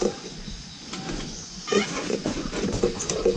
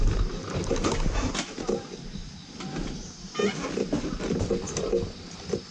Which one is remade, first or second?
first